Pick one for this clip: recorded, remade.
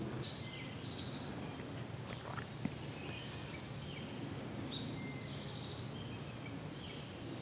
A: recorded